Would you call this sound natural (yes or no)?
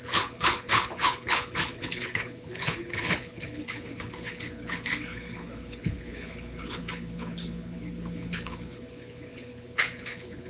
no